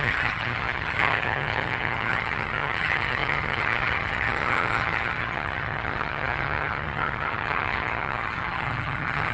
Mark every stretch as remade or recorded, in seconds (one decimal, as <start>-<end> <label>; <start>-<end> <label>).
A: 0.0-9.3 remade